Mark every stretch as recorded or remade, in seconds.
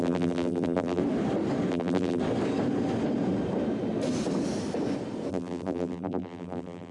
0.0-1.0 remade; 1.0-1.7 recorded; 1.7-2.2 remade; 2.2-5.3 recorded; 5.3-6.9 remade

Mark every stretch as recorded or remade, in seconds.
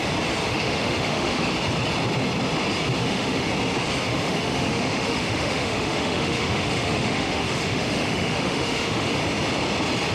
0.0-0.5 recorded; 0.5-1.5 remade; 1.5-3.0 recorded; 3.0-3.5 remade; 3.5-4.1 recorded; 4.1-9.1 remade; 9.1-10.1 recorded